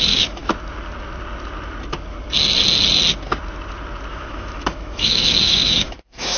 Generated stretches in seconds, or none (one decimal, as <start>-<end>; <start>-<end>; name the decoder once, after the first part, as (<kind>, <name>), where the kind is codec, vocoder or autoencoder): 0.0-0.4 (autoencoder, DAC-VAE); 4.1-6.4